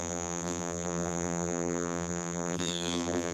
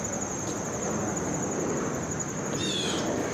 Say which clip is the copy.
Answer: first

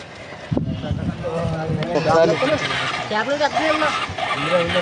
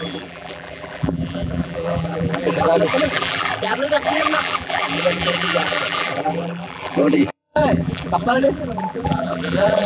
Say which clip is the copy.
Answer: second